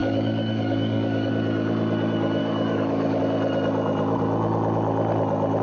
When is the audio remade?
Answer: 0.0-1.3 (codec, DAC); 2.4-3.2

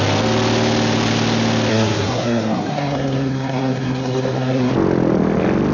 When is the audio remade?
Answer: 1.7-4.7 (codec, SNAC)

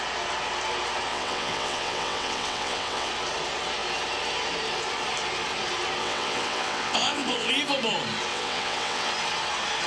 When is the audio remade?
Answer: 1.1-3.1 (vocoder, WaveNeXt); 6.0-7.5; 8.3-9.1

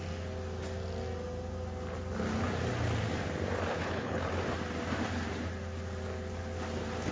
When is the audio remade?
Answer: 3.7-4.3 (codec, HILCodec)

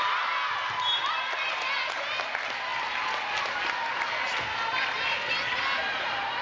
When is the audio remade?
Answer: none

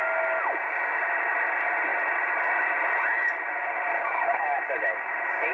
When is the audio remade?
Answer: 3.9-4.4 (vocoder, HiFi-GAN)

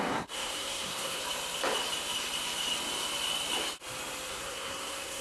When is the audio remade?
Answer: 0.0-1.2 (codec, SNAC); 4.3-5.2